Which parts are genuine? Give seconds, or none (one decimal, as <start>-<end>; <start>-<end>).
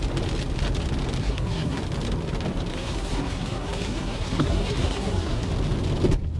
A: 0.0-1.2; 1.8-2.7; 5.5-6.4